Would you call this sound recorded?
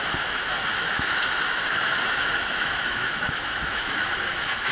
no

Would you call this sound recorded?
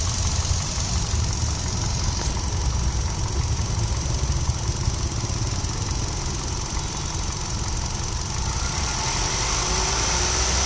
yes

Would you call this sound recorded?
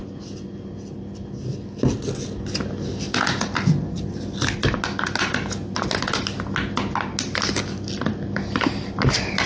yes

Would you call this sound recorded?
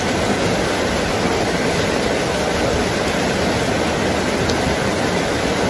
yes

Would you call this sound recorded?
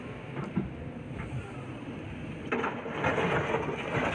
yes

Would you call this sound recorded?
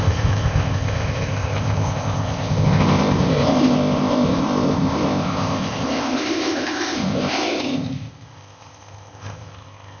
no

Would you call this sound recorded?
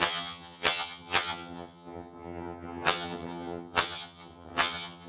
no